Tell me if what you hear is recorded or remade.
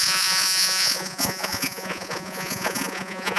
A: remade